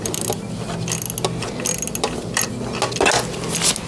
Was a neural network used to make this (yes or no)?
no